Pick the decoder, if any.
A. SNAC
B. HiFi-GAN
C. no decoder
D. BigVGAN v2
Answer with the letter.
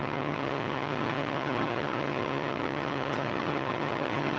B